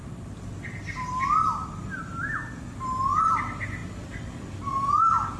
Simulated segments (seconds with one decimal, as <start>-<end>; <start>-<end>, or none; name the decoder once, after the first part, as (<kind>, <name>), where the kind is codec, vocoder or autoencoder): none

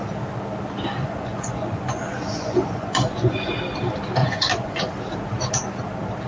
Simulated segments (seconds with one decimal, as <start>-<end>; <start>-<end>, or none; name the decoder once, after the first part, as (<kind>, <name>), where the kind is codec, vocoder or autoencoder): 1.0-3.5 (vocoder, Vocos); 4.2-4.9

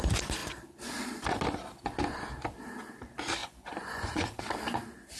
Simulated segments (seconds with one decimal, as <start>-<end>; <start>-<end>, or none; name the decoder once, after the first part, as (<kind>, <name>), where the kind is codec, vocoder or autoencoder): 3.4-4.4 (vocoder, Vocos)

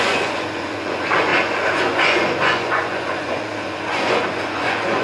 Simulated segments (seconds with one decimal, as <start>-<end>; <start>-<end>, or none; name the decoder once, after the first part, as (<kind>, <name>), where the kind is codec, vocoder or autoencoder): 0.0-5.0 (vocoder, Vocos)

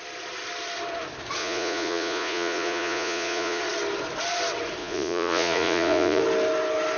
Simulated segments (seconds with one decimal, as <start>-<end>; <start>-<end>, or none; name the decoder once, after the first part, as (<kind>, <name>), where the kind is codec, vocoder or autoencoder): 1.4-3.6 (vocoder, Vocos); 4.8-6.2

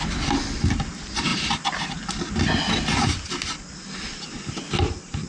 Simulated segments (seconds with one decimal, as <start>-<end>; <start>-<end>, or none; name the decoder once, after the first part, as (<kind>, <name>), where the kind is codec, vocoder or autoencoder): none

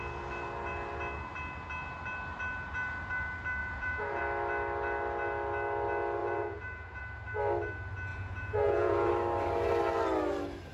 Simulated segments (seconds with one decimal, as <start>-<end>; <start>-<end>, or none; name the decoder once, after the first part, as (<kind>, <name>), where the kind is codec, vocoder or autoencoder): 3.6-4.2 (vocoder, Vocos); 6.2-7.0; 8.1-9.1

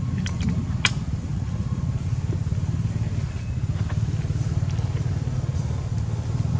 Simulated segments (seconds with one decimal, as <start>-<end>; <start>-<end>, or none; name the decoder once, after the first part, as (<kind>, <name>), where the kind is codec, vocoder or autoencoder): 1.3-1.8 (vocoder, Vocos)